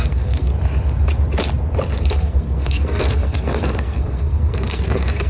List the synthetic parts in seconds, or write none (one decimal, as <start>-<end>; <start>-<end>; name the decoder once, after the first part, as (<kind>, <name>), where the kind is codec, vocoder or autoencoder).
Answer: 0.0-0.5 (codec, SNAC); 2.0-5.3